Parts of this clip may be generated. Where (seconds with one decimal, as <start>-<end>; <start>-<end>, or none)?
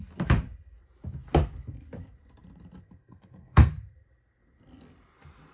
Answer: 3.0-3.7